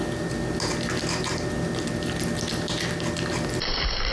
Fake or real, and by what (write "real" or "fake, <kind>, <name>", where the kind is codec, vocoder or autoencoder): real